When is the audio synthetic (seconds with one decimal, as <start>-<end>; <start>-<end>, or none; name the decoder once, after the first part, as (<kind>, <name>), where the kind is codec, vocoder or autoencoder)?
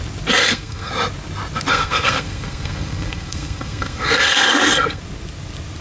0.4-0.9 (codec, SNAC); 1.7-5.0